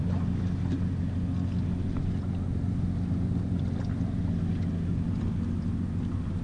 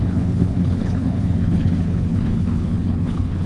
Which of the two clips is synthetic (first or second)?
second